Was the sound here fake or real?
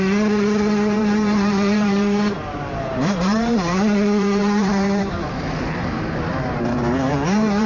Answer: fake